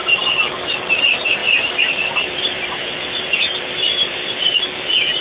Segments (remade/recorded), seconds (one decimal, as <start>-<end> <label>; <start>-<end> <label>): 0.0-1.4 recorded; 1.4-4.5 remade; 4.5-5.2 recorded